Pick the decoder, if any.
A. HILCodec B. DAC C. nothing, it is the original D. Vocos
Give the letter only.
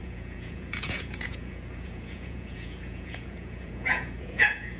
D